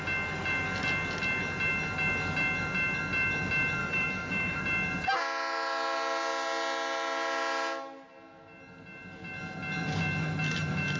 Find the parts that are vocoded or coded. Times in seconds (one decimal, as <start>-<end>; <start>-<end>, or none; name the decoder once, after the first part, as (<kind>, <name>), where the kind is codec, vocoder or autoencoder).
3.8-4.6 (autoencoder, DAC-VAE)